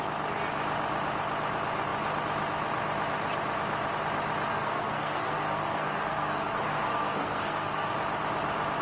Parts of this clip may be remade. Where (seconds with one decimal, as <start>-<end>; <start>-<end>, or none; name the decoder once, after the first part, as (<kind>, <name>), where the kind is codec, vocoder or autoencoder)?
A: 4.5-7.9 (codec, SNAC)